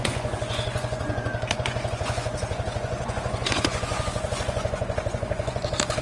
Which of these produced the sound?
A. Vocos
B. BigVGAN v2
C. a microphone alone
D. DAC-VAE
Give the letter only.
A